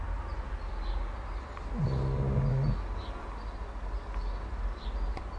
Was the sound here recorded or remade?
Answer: recorded